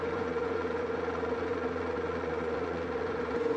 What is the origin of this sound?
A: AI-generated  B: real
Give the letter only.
A